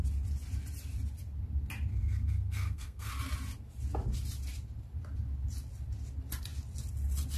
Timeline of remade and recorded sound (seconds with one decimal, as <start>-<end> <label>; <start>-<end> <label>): 0.0-1.9 recorded; 1.9-3.1 remade; 3.1-7.4 recorded